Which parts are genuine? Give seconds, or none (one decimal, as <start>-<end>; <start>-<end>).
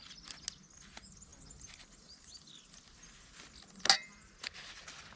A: 0.0-5.2